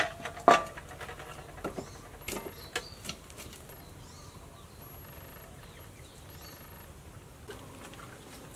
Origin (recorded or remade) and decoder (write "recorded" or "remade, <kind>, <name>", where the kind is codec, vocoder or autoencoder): recorded